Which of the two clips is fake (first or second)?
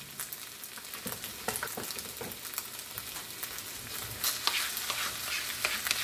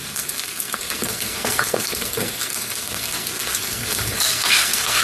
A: second